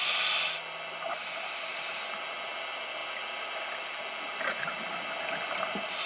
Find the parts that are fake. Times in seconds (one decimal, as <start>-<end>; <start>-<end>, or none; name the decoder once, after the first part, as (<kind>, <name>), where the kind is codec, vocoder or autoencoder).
none